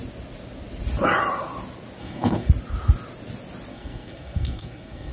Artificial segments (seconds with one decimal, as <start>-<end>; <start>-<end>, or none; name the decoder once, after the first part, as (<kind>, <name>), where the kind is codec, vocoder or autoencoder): 2.0-2.5 (codec, SNAC); 3.7-5.1